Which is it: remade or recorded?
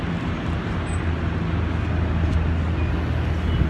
recorded